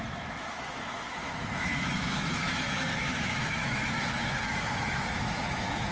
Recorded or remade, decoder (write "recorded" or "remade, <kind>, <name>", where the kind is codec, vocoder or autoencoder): remade, autoencoder, DAC-VAE